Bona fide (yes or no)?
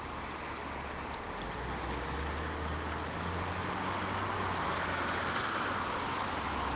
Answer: yes